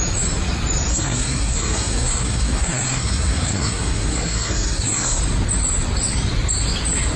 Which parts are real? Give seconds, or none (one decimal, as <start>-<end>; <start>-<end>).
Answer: 0.0-0.9; 5.2-7.2